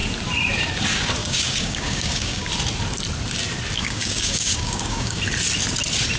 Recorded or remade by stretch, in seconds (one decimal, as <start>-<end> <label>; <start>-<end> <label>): 0.0-1.2 recorded; 1.2-2.5 remade; 2.5-3.8 recorded; 3.8-5.2 remade; 5.2-6.2 recorded